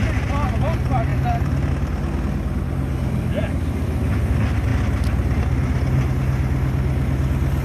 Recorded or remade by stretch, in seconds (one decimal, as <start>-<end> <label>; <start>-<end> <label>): 0.0-1.1 recorded; 1.1-1.7 remade; 1.7-7.6 recorded